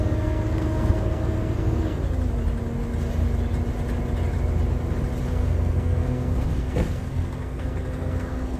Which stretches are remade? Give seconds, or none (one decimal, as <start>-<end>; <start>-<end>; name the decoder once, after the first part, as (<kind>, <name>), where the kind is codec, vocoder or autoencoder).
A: 0.0-2.0 (codec, SNAC); 5.3-8.6

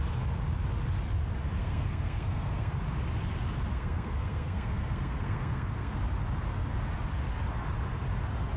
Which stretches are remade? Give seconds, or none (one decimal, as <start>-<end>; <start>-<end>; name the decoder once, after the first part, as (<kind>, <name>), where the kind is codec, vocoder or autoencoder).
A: 1.6-2.7 (codec, SNAC); 3.7-6.0

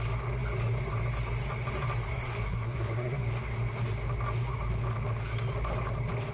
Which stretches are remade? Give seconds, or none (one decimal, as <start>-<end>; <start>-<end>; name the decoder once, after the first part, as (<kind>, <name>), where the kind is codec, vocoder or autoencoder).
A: 2.1-3.3 (codec, SNAC)

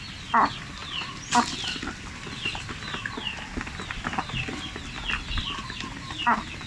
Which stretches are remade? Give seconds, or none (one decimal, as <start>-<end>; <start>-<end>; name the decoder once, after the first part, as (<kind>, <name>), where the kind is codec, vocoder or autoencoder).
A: none

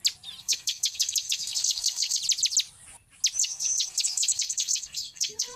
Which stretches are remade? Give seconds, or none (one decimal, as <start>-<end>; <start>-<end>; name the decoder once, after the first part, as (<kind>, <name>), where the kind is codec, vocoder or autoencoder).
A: 0.4-2.2 (codec, SNAC); 3.4-5.6

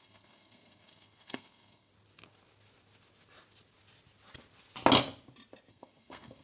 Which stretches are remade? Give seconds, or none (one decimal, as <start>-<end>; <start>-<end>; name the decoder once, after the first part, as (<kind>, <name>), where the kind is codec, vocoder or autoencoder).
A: 0.0-1.9 (codec, SNAC); 5.7-6.4

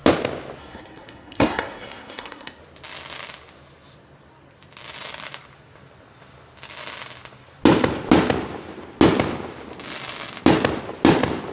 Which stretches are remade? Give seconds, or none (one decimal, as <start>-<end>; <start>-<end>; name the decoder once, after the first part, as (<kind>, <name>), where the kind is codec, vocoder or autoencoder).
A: 0.6-2.6 (codec, SNAC)

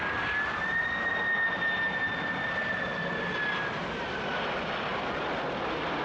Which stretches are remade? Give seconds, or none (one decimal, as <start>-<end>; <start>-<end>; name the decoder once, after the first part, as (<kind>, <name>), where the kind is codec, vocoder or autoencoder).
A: none